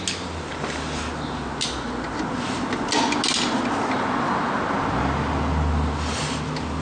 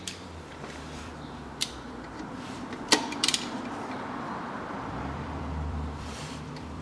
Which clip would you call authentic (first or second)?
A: first